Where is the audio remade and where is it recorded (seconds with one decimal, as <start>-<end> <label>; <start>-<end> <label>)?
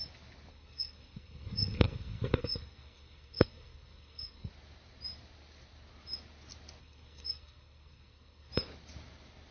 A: 0.0-0.5 recorded; 0.5-4.5 remade; 4.5-6.8 recorded; 6.8-8.5 remade; 8.5-9.5 recorded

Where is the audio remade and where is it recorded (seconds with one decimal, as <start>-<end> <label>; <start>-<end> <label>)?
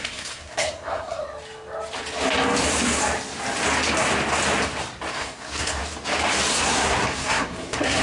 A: 0.0-1.2 remade; 1.2-5.1 recorded; 5.1-5.8 remade; 5.8-6.5 recorded; 6.5-8.0 remade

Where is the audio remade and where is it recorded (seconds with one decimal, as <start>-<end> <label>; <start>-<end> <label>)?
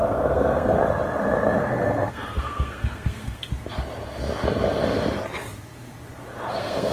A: 0.0-0.8 remade; 0.8-1.6 recorded; 1.6-3.5 remade; 3.5-6.5 recorded; 6.5-6.9 remade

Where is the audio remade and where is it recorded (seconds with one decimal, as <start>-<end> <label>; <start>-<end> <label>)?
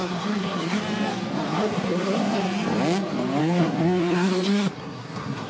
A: 0.0-0.8 remade; 0.8-1.5 recorded; 1.5-2.4 remade; 2.4-3.4 recorded; 3.4-5.5 remade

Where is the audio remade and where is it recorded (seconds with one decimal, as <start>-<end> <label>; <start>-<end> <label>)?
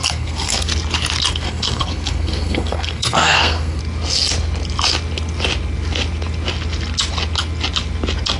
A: 0.0-0.7 remade; 0.7-1.3 recorded; 1.3-3.8 remade; 3.8-8.4 recorded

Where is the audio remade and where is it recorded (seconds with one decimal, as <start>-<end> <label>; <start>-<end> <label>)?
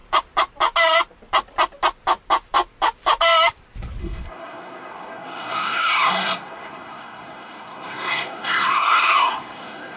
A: 0.0-4.0 recorded; 4.0-10.0 remade